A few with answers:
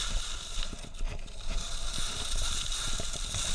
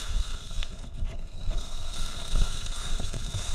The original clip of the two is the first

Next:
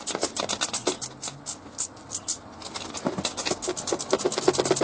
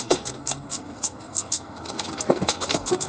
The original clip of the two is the first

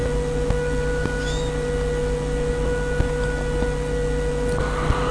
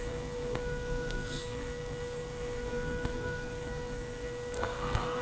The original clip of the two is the first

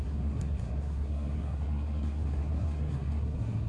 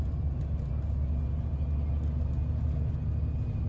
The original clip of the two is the second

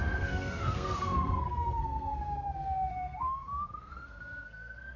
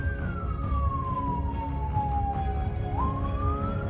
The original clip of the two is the second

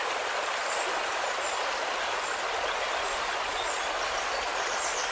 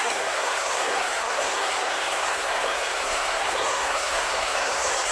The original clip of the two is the first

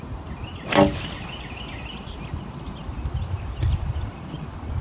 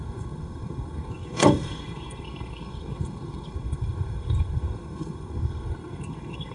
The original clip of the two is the first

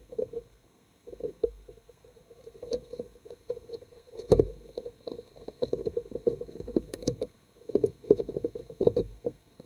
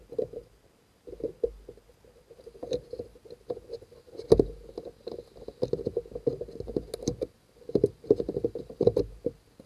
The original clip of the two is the second